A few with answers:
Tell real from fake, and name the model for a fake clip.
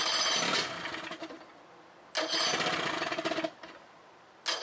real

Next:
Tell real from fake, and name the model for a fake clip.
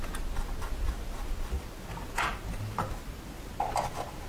real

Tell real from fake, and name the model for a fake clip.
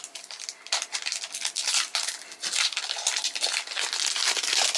real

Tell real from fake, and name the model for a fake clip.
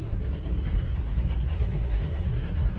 fake, codec, SNAC